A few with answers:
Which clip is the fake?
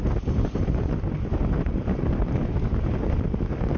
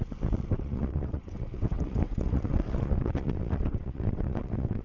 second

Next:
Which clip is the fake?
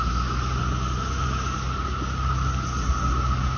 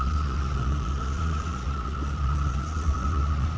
second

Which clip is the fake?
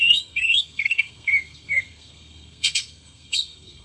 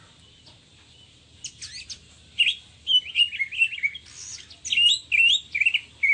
first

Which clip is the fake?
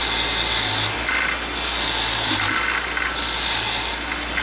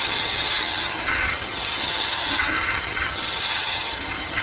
second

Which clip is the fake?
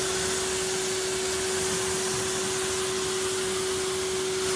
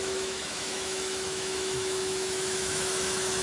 second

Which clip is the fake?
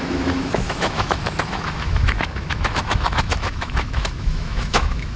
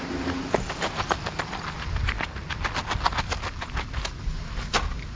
first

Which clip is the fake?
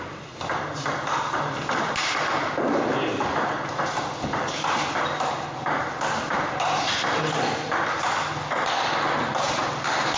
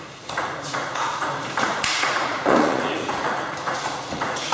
second